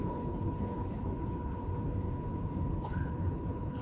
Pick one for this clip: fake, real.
fake